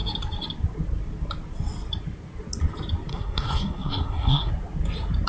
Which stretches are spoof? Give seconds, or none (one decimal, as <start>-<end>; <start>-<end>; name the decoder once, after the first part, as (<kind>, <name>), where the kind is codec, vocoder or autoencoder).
3.1-4.5 (codec, SNAC)

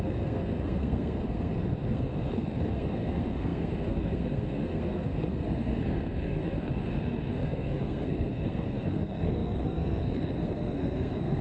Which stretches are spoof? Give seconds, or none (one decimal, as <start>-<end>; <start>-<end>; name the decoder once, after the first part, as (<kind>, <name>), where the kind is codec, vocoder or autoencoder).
0.0-11.4 (codec, SNAC)

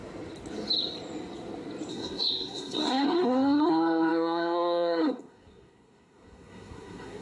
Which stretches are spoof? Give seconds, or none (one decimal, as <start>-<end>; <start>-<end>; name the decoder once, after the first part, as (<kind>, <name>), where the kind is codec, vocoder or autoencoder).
1.9-7.2 (codec, SNAC)

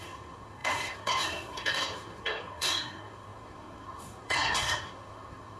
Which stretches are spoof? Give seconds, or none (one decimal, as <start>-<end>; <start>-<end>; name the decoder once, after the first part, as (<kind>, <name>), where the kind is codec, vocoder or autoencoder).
0.0-5.6 (codec, SNAC)